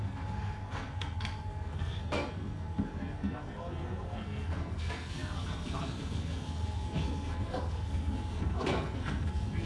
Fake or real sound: fake